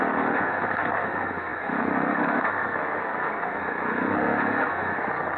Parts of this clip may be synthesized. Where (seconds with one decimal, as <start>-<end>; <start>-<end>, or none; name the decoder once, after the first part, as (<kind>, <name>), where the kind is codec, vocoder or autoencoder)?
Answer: 0.0-5.4 (codec, SNAC)